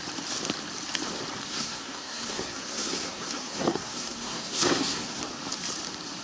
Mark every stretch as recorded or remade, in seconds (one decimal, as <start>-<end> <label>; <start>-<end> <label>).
0.0-1.5 recorded; 1.5-5.2 remade; 5.2-6.2 recorded